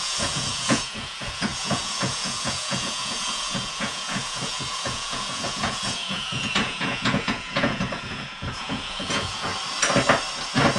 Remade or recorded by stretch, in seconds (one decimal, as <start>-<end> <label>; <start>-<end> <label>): 0.0-9.5 remade; 9.5-10.8 recorded